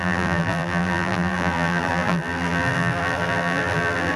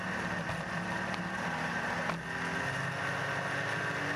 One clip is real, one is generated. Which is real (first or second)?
second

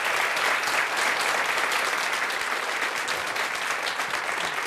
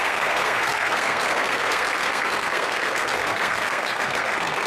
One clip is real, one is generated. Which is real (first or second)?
first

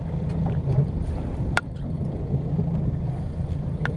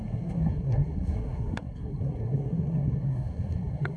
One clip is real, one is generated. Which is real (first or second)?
first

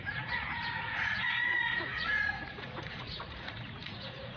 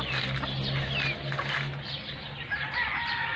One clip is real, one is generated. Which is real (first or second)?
second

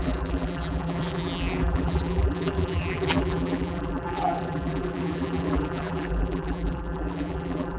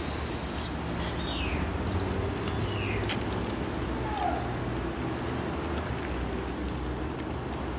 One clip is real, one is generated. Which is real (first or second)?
second